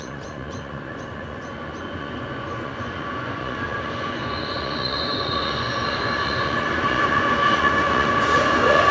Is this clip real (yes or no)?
no